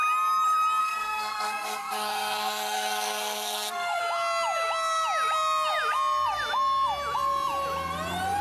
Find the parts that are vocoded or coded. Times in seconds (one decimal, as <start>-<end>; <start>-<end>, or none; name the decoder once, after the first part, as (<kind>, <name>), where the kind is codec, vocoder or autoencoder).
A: 0.8-4.0 (codec, SNAC)